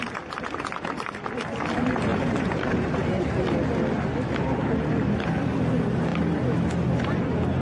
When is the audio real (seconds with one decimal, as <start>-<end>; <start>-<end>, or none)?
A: 0.0-2.1; 3.1-7.6